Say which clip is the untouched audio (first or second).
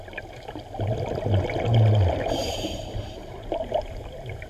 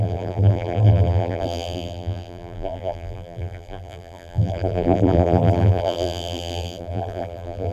first